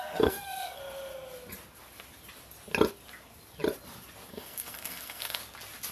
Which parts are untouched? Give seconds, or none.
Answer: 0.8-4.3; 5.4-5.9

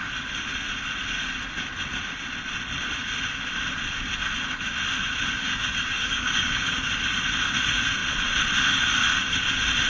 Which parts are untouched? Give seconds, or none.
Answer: 0.0-5.4; 6.9-9.9

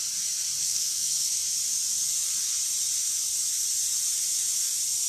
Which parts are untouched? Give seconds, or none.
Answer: 0.0-0.6; 1.3-5.1

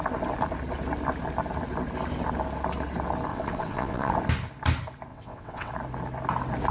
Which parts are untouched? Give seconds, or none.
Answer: 0.0-3.3; 4.1-5.1; 5.7-6.7

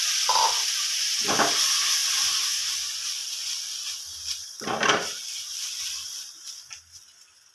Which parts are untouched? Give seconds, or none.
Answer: 0.0-3.2; 6.7-7.5

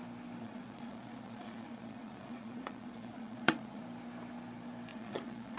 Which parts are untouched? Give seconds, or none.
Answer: 0.0-0.4; 3.8-4.9

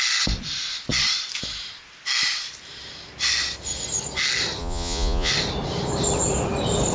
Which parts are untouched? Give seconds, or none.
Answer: 0.0-4.6; 5.3-6.9

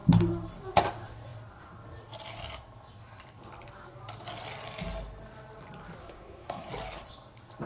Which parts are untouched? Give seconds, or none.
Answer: 0.0-6.0; 6.7-7.7